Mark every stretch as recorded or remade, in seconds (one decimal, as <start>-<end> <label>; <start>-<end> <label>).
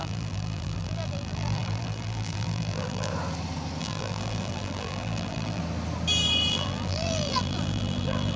0.0-3.1 remade; 3.1-3.8 recorded; 3.8-5.6 remade; 5.6-6.5 recorded; 6.5-8.4 remade